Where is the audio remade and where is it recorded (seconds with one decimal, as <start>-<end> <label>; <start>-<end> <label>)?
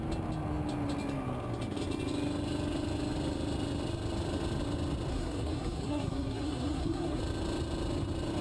0.0-5.1 recorded; 5.1-7.2 remade; 7.2-8.4 recorded